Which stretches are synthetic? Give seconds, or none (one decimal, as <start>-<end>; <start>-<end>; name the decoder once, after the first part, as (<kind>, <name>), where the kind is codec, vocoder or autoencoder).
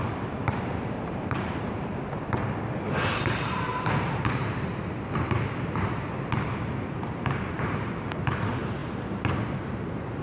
0.0-1.9 (vocoder, BigVGAN v2); 3.2-4.7; 7.2-10.2